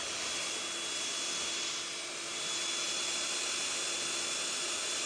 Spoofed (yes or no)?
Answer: no